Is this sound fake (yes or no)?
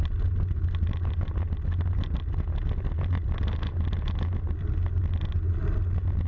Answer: no